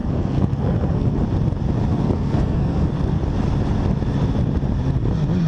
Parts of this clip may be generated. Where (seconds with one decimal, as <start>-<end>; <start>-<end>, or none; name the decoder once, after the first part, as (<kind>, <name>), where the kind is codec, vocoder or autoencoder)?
0.0-1.2 (codec, SNAC); 1.9-3.2